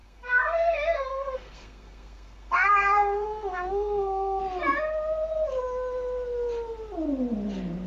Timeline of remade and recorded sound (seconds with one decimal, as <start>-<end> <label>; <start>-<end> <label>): 0.0-4.4 remade; 4.4-7.9 recorded